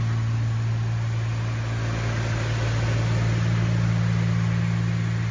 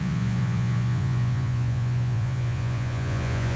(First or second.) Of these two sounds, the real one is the first